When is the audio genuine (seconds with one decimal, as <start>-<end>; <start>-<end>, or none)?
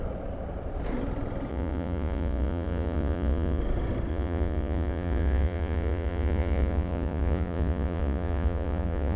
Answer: 0.0-1.5; 3.6-4.1